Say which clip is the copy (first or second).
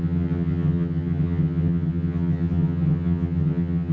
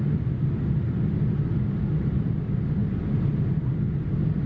first